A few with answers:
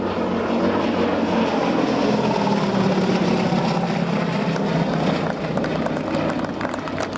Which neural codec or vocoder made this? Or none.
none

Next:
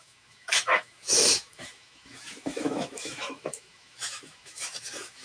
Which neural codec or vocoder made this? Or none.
autoencoder, DAC-VAE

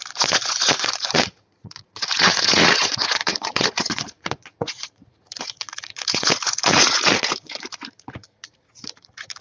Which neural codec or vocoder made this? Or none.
vocoder, Vocos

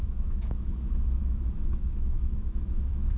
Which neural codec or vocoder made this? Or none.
autoencoder, DAC-VAE